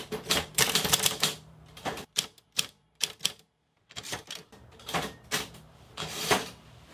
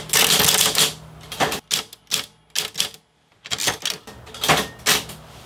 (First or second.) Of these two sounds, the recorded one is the second